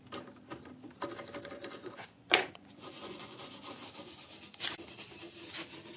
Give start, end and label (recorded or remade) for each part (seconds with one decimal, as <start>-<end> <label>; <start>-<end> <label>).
0.0-1.8 recorded; 1.8-3.5 remade; 3.5-6.0 recorded